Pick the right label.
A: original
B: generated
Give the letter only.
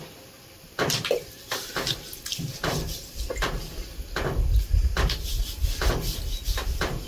A